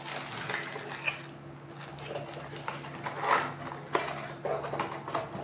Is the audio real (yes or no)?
yes